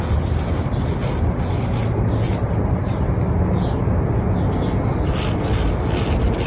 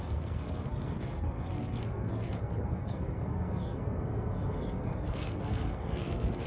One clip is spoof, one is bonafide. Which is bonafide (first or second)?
first